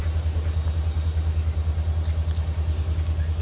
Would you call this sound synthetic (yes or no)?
no